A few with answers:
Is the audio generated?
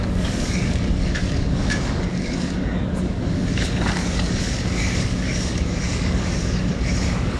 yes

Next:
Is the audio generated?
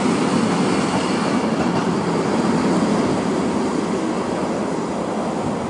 no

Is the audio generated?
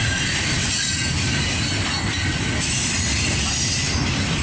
no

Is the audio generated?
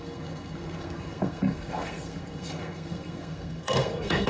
yes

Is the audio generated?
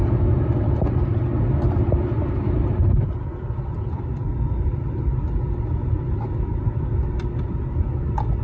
no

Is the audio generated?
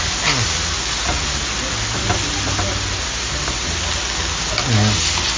no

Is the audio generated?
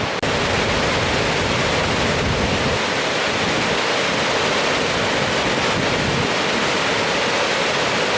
no